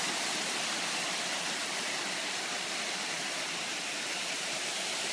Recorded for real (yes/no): yes